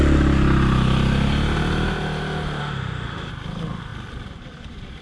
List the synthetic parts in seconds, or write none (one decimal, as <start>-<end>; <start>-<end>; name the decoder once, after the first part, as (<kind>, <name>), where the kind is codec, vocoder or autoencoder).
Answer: 2.6-3.3 (autoencoder, DAC-VAE)